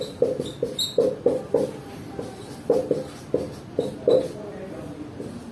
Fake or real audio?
real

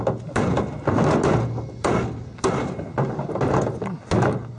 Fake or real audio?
real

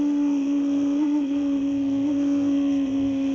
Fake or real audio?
fake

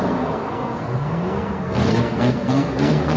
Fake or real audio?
fake